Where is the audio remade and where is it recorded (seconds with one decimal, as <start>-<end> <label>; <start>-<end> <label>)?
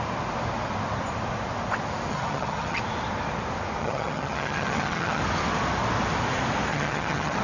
0.0-2.1 recorded; 2.1-2.8 remade; 2.8-3.8 recorded; 3.8-5.2 remade; 5.2-6.7 recorded; 6.7-7.4 remade